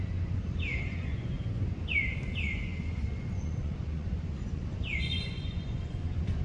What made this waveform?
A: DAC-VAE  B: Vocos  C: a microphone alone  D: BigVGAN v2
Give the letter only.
B